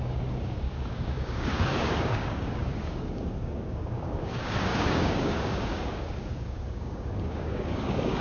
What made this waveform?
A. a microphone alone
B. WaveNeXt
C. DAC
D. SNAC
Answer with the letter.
C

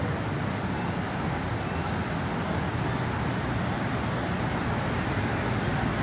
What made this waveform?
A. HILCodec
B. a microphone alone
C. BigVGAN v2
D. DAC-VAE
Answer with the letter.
B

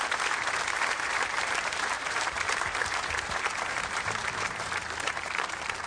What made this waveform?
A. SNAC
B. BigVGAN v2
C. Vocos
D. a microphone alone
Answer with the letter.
B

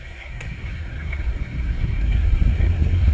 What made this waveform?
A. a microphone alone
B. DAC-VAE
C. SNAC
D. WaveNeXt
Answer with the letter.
C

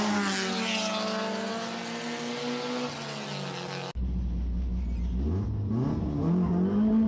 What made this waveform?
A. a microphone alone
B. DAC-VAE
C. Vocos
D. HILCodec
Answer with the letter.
A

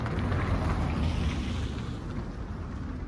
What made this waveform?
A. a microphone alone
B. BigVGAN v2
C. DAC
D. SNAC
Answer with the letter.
A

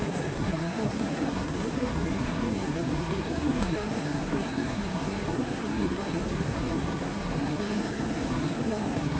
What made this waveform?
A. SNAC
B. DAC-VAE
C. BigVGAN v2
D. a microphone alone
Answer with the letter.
A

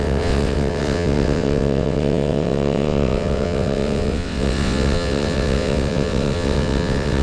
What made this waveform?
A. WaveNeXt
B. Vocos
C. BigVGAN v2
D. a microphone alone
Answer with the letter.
A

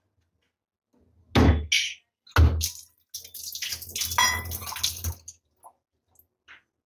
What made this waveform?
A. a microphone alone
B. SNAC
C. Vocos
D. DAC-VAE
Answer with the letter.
A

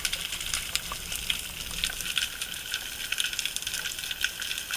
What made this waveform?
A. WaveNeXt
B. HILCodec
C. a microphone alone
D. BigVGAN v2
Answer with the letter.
C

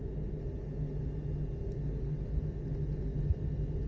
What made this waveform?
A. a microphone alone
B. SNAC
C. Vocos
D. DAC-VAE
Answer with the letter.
A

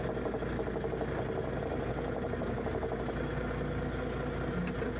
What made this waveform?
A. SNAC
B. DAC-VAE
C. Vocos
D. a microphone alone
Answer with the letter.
D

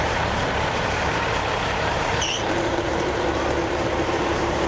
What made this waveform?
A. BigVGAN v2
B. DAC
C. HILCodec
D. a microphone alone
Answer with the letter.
A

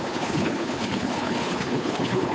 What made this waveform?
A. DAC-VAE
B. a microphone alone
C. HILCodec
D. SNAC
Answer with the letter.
C